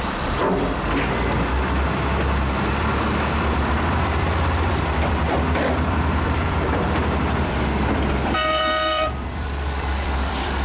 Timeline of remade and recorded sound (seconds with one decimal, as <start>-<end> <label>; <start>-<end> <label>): 0.0-0.4 remade; 0.4-2.7 recorded; 2.7-10.6 remade